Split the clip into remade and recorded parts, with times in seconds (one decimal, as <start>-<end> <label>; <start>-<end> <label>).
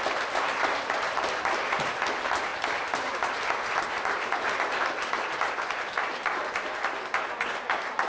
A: 0.0-8.1 remade